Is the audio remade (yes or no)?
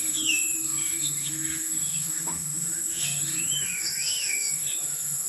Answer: yes